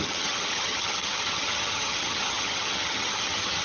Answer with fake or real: fake